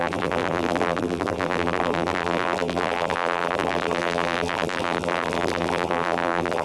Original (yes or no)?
no